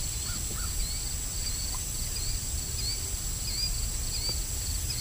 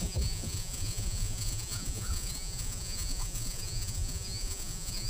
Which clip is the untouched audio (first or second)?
first